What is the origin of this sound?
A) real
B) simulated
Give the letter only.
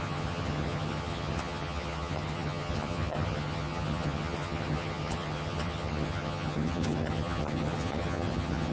B